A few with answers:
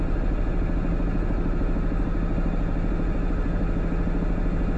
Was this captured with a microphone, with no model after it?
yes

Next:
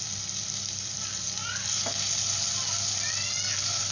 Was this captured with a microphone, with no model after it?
yes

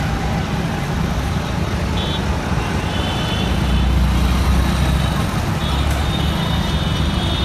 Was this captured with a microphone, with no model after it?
yes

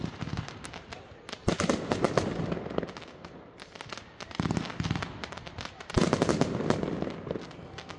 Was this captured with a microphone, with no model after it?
yes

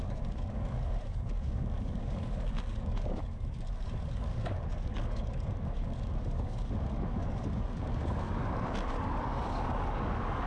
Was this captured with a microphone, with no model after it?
no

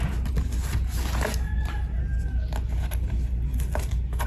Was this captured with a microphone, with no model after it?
yes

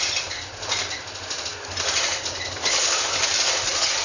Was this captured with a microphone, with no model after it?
yes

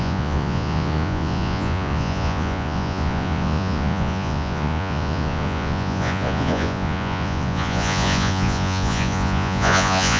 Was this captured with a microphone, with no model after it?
no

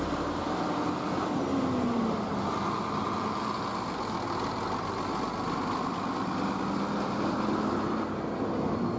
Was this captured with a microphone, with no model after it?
yes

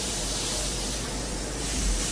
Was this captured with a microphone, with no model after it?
no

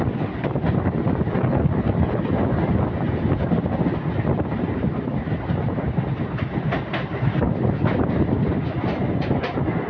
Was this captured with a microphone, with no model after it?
yes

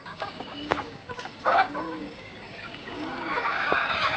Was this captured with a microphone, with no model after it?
no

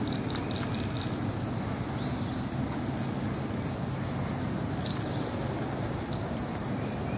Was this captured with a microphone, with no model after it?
yes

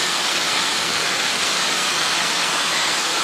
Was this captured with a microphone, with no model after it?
no